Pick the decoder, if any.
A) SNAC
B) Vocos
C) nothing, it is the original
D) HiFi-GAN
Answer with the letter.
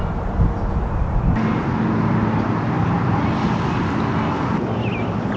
C